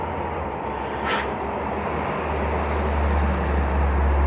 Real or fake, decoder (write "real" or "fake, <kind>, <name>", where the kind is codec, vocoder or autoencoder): real